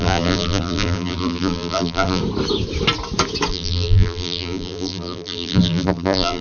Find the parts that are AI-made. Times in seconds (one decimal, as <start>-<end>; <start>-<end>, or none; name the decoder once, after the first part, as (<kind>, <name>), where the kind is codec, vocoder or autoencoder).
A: 0.0-2.2 (vocoder, BigVGAN v2); 3.5-6.4